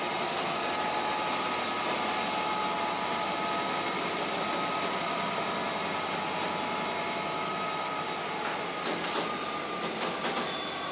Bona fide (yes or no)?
yes